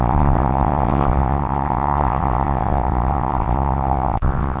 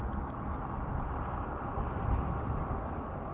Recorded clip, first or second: second